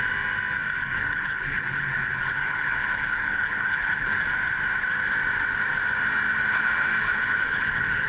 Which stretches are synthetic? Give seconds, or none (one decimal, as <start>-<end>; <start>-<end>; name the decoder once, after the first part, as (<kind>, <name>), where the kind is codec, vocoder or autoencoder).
0.8-4.2 (codec, HILCodec); 6.5-8.1